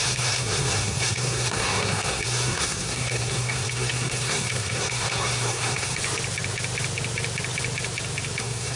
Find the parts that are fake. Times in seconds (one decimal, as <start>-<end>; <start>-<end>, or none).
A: 0.0-6.0; 8.4-8.8